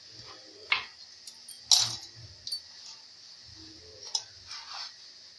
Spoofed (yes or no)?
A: no